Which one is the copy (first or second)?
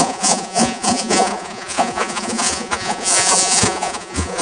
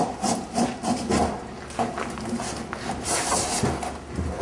first